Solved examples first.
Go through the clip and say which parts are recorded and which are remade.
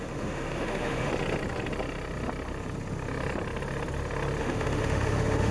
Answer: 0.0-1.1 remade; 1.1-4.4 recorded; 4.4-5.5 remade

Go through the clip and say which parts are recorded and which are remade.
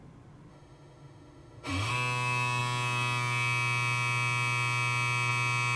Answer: 0.0-0.5 recorded; 0.5-1.9 remade; 1.9-5.8 recorded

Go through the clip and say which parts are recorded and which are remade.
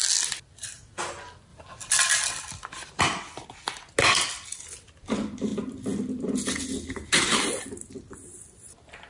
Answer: 0.0-9.1 recorded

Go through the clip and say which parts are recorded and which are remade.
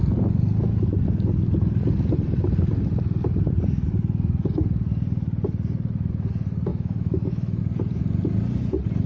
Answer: 0.0-6.7 recorded; 6.7-7.6 remade; 7.6-9.1 recorded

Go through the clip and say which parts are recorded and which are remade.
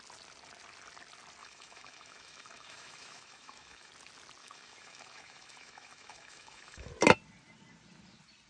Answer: 0.0-1.4 recorded; 1.4-3.9 remade; 3.9-4.4 recorded; 4.4-6.9 remade; 6.9-8.5 recorded